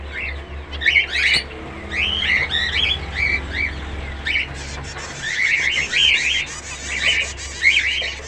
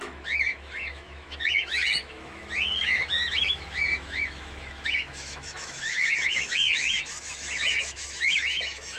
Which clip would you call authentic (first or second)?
first